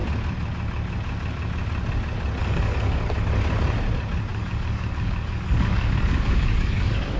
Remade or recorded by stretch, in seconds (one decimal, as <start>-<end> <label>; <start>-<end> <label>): 0.0-2.4 recorded; 2.4-3.0 remade; 3.0-4.3 recorded; 4.3-7.2 remade

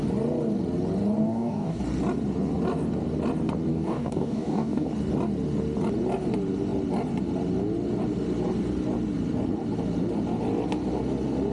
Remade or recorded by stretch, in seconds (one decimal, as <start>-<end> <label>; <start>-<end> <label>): 0.0-1.2 recorded; 1.2-1.8 remade; 1.8-3.7 recorded; 3.7-4.9 remade; 4.9-11.5 recorded